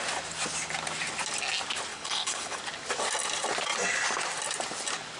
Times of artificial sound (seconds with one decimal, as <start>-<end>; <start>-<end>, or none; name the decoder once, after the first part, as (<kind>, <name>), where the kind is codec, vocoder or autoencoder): 1.9-2.6 (codec, HILCodec)